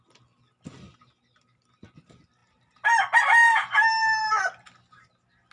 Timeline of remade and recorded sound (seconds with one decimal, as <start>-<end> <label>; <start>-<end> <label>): 0.0-5.5 recorded